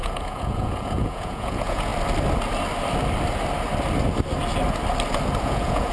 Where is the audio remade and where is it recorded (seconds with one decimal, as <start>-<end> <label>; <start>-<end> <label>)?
0.0-1.9 remade; 1.9-5.4 recorded; 5.4-5.9 remade